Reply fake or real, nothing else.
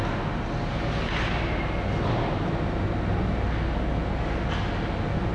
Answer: real